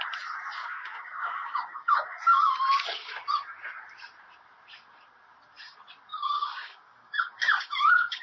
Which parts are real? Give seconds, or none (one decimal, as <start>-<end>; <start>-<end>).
0.0-0.6; 2.5-6.1